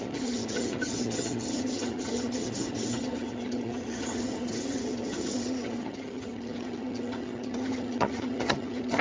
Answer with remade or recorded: remade